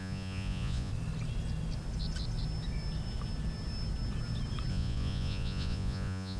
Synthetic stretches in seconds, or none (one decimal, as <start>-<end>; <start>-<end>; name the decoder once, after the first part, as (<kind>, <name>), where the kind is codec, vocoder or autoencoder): 0.0-0.9 (vocoder, Vocos); 4.7-6.4